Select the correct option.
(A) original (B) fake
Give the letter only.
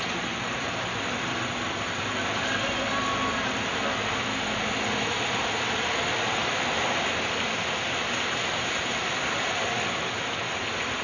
A